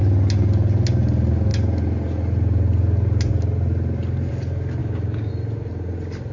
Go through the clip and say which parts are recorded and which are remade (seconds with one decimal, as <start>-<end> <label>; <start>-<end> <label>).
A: 0.0-4.8 recorded; 4.8-5.3 remade; 5.3-6.3 recorded